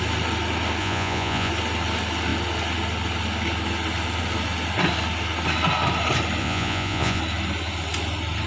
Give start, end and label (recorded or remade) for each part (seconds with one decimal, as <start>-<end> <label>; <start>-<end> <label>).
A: 0.0-0.8 recorded; 0.8-1.5 remade; 1.5-6.4 recorded; 6.4-7.2 remade; 7.2-8.5 recorded